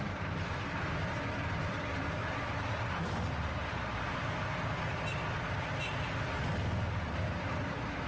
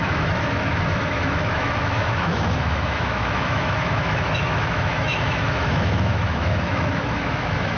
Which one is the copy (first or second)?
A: second